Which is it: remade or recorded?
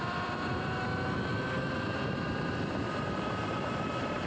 remade